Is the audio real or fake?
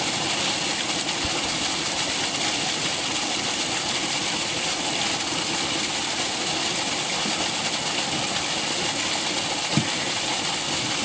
real